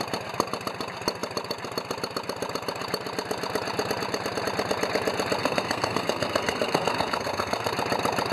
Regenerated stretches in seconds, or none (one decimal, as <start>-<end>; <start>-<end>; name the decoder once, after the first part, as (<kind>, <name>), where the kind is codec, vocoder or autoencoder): 5.4-7.7 (codec, SNAC)